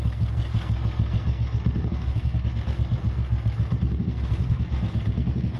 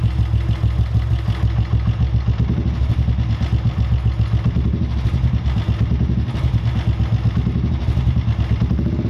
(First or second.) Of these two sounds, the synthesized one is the first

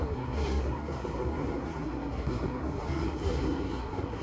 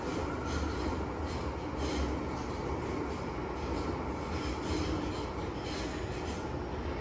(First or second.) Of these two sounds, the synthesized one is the first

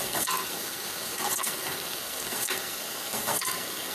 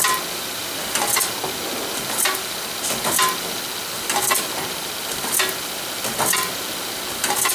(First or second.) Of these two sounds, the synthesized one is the first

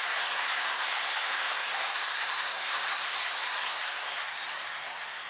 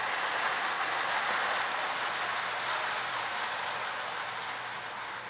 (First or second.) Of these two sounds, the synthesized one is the first